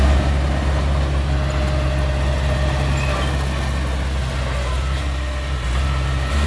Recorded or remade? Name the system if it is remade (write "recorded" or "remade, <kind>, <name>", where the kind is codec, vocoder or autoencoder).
recorded